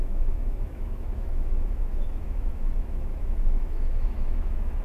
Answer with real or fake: fake